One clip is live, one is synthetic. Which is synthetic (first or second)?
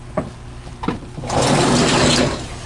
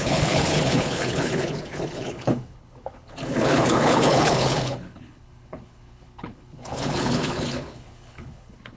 second